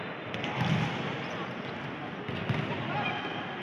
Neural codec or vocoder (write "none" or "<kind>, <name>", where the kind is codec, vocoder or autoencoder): none